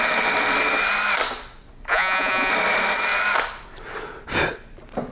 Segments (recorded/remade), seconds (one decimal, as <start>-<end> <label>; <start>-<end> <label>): 0.0-1.9 recorded; 1.9-2.5 remade; 2.5-5.1 recorded